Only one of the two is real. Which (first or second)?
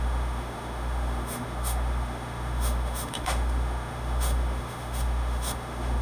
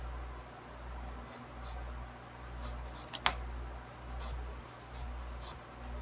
second